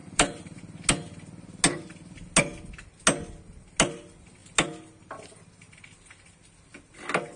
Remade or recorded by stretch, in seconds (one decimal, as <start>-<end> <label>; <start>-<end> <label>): 0.0-0.6 remade; 0.6-7.4 recorded